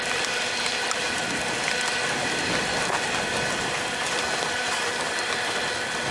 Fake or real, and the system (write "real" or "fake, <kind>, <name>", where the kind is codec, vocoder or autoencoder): real